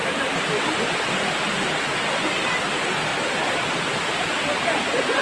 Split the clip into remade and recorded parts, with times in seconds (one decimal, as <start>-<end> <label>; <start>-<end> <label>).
0.0-0.6 remade; 0.6-3.1 recorded; 3.1-4.3 remade; 4.3-5.2 recorded